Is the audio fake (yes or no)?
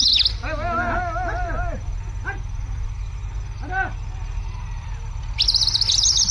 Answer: no